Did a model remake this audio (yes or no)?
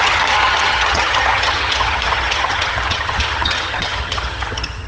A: yes